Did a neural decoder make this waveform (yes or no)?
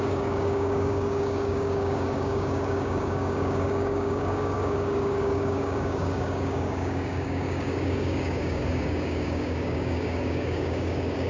yes